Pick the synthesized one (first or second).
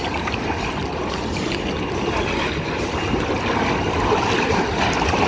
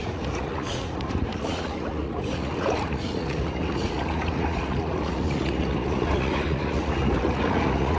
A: second